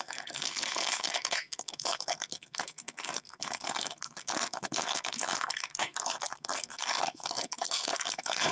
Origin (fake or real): fake